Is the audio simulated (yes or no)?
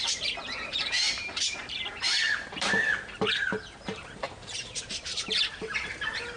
yes